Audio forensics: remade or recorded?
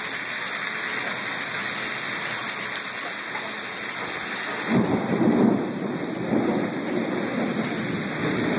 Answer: recorded